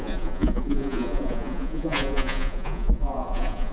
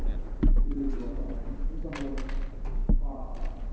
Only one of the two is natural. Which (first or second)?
second